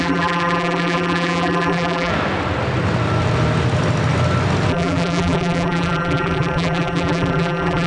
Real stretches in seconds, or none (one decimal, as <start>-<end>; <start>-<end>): 2.1-4.7